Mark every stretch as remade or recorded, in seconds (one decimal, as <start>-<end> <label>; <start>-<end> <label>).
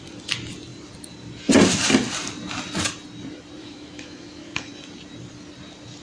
0.0-3.6 recorded; 3.6-4.7 remade; 4.7-6.0 recorded